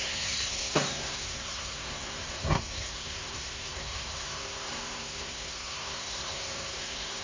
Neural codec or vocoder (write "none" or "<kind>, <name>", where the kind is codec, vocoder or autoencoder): codec, SNAC